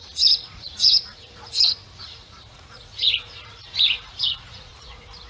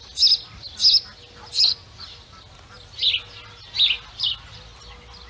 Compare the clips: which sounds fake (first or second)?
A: first